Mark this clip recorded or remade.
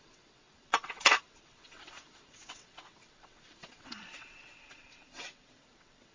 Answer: remade